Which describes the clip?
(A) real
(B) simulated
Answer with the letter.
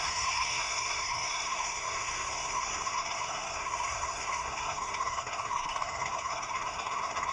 B